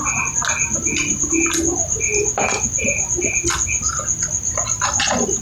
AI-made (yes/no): no